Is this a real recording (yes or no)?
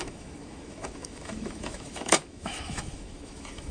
no